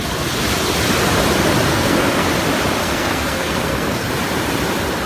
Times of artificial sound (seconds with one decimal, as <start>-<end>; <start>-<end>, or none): 1.7-2.3; 2.8-4.1